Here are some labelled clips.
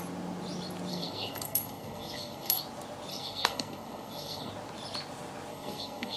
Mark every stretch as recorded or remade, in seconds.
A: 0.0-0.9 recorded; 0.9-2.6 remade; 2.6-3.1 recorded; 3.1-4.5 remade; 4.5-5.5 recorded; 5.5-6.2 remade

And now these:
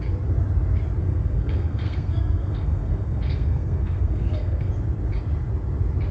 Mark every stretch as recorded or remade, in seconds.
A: 0.0-1.0 recorded; 1.0-4.7 remade; 4.7-6.1 recorded